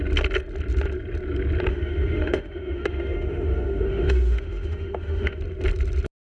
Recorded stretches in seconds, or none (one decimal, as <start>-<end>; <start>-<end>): 0.0-1.7; 5.4-6.2